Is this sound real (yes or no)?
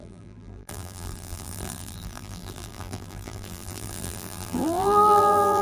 no